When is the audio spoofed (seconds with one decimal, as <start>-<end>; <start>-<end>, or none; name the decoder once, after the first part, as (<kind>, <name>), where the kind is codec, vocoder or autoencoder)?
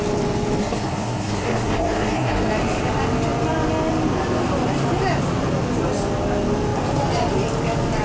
0.6-2.5 (codec, SNAC)